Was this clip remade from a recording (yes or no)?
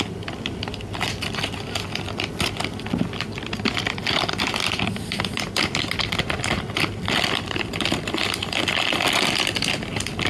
no